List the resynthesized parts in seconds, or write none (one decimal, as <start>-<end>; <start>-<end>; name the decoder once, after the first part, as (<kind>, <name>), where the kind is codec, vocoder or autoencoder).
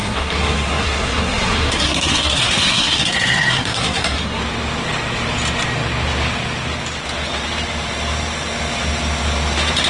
0.0-4.4 (codec, SNAC)